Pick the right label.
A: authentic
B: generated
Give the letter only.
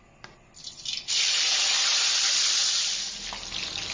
A